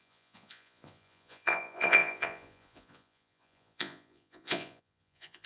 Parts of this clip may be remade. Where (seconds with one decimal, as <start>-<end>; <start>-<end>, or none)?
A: 0.0-5.5